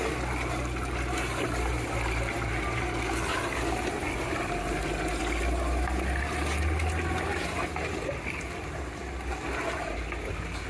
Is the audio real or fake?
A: real